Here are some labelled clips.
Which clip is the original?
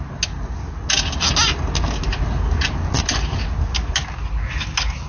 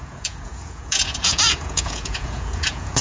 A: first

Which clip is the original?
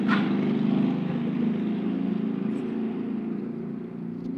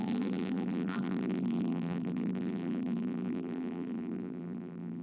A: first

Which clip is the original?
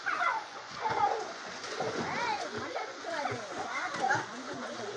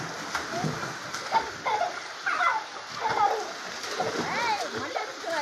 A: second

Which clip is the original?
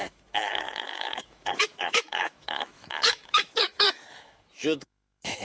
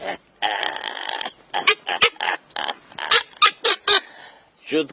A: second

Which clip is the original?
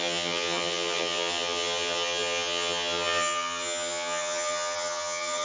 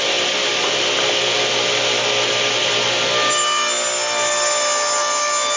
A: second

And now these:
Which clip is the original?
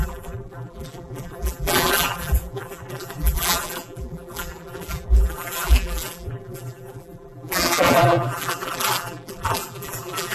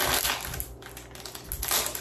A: second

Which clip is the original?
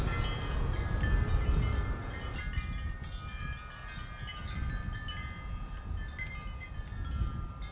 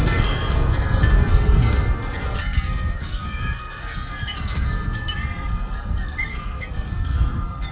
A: first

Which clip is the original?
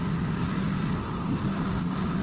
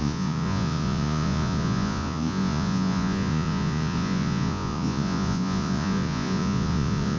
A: first